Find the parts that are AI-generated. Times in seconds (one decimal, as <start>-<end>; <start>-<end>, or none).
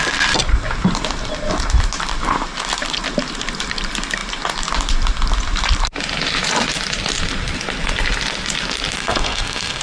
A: 9.0-9.8